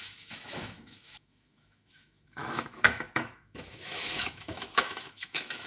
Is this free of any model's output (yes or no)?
no